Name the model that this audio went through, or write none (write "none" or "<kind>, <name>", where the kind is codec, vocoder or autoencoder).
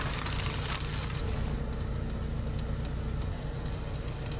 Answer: none